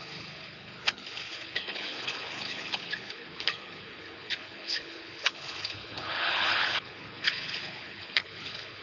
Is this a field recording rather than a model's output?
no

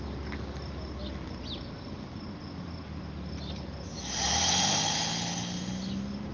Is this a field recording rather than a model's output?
yes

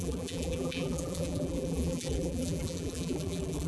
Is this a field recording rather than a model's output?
no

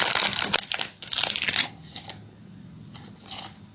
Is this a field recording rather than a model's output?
yes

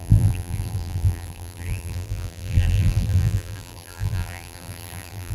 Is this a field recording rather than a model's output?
no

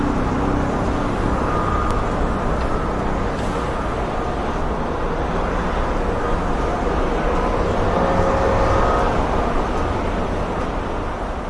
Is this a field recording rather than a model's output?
yes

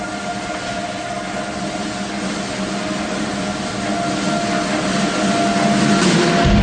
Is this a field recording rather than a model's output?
yes